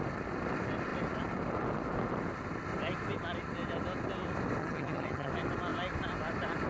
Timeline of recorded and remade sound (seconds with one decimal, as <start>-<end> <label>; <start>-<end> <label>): 0.0-4.6 recorded; 4.6-5.3 remade; 5.3-6.7 recorded